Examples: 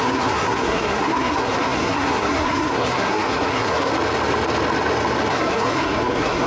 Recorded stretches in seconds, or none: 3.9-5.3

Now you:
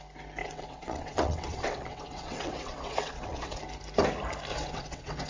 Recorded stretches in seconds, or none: 0.0-0.4; 3.6-4.5

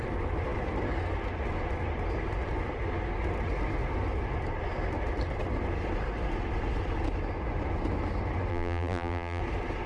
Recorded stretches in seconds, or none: 0.0-8.5; 9.4-9.9

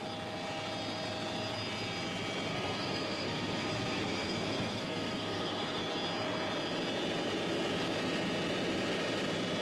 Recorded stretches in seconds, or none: 0.0-2.5; 5.8-9.6

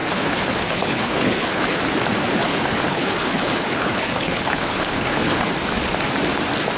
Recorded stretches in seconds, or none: 1.8-2.4; 5.5-6.8

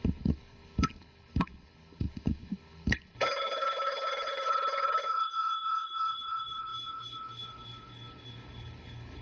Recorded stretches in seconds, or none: none

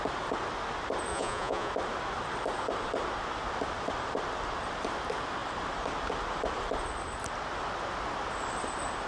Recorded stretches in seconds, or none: 0.0-1.1; 1.7-9.1

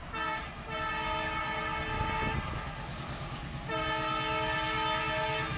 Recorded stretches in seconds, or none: 0.0-5.6